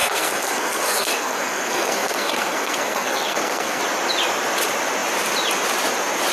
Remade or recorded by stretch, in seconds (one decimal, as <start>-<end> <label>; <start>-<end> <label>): 0.0-3.8 remade; 3.8-6.3 recorded